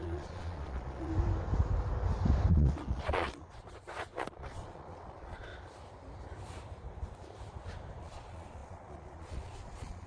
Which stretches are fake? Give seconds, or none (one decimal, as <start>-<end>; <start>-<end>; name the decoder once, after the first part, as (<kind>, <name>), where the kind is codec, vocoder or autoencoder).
0.0-1.1 (vocoder, Vocos); 2.5-5.5; 8.0-10.1